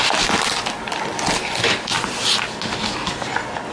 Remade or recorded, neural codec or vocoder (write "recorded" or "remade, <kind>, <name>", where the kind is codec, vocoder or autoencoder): recorded